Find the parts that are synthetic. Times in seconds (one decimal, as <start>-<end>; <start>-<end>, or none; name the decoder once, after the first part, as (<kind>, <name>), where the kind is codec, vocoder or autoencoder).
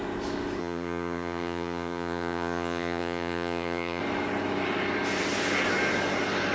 0.6-4.0 (vocoder, HiFi-GAN)